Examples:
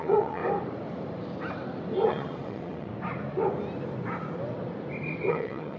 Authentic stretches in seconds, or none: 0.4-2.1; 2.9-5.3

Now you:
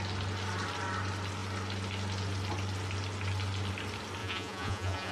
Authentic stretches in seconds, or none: 0.0-4.2